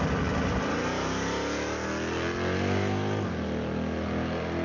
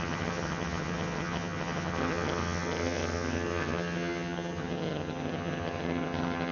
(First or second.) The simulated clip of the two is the second